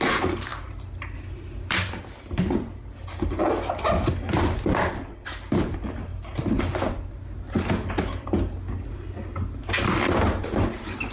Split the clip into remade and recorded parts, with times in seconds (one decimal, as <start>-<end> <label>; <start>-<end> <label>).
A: 0.0-11.1 recorded